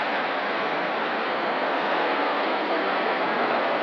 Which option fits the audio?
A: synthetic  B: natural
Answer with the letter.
A